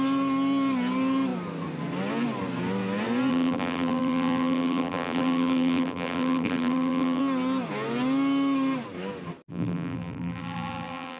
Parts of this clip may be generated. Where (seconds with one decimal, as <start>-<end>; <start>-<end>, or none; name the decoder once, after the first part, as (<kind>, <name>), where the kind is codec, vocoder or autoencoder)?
3.3-7.2 (vocoder, BigVGAN v2); 9.5-11.2